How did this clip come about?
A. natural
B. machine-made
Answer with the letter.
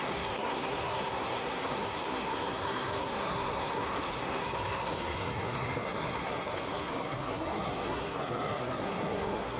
B